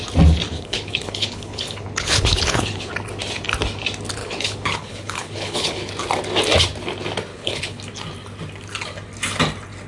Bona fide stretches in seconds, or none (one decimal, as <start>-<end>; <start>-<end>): 0.0-0.5; 2.9-4.2; 5.9-7.3; 7.8-9.9